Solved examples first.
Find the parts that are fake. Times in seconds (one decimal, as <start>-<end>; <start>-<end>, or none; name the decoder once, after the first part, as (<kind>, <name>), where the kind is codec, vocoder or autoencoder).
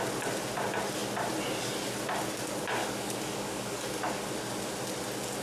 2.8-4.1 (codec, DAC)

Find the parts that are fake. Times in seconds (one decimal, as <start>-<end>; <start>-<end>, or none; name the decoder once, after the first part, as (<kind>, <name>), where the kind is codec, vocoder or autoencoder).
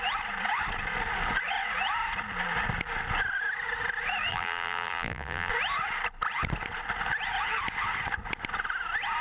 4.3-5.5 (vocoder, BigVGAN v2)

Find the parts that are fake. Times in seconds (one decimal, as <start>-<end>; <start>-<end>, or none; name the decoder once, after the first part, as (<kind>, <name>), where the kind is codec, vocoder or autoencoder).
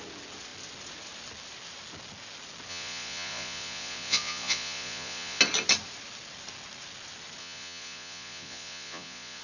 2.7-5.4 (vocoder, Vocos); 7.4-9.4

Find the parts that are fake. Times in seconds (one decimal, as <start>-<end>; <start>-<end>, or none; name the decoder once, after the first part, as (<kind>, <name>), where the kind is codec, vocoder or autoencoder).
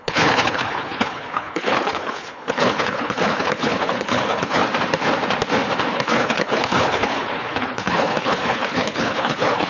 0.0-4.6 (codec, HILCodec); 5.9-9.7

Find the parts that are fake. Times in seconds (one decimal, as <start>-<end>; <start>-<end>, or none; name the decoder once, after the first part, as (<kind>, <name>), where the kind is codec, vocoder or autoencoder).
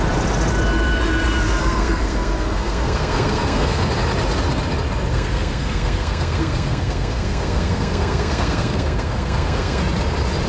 1.6-3.9 (codec, SNAC); 5.1-9.8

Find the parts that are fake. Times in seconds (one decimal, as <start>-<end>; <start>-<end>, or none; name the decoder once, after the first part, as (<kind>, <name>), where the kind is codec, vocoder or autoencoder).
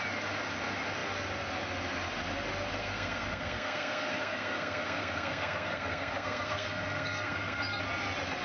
2.8-7.8 (codec, SNAC)